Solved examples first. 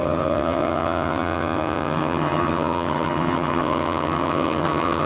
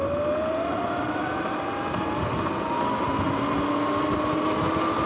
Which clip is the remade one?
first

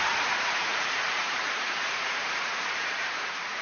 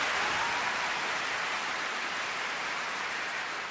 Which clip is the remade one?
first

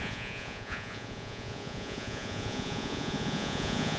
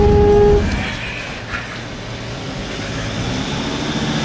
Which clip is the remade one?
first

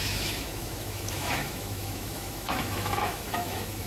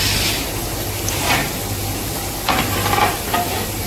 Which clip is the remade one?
first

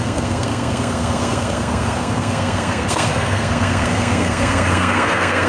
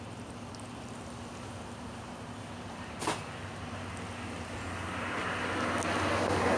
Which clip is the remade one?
first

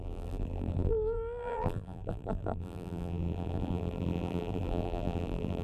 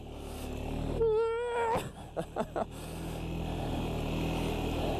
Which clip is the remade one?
first